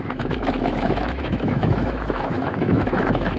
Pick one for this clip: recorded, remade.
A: remade